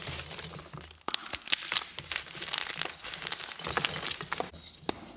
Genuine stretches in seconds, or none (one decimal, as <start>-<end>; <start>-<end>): 0.0-5.2